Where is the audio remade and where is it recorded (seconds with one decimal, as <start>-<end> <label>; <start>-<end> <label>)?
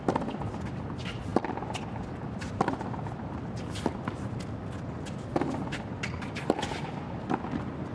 0.0-7.9 recorded